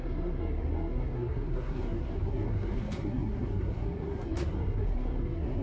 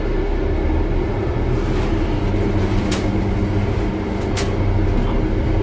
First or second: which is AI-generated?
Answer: first